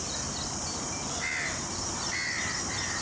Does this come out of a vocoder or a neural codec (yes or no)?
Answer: no